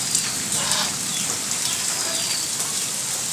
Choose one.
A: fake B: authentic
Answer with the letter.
B